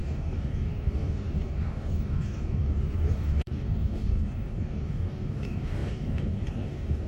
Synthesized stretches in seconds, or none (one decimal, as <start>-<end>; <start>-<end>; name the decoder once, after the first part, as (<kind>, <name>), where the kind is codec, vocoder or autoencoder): 0.0-7.1 (codec, DAC)